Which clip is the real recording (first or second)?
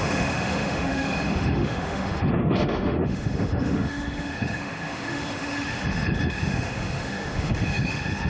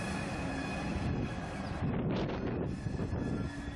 second